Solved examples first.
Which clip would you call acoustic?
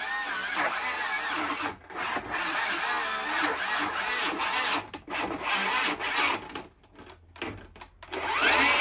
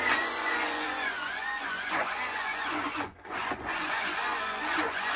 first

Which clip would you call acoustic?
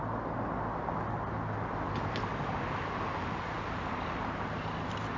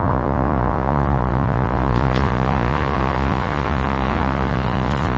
first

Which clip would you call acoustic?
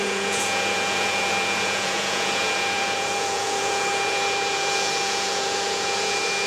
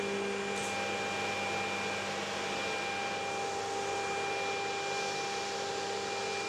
second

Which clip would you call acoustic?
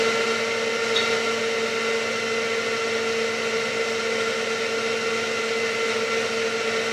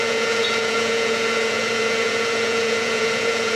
first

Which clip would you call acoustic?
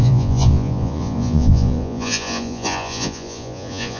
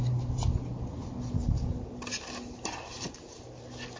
second